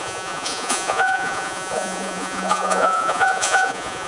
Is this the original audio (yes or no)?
no